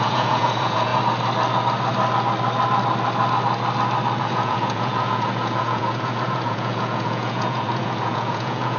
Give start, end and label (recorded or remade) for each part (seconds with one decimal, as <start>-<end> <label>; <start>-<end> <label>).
0.0-0.9 remade; 0.9-4.2 recorded; 4.2-8.8 remade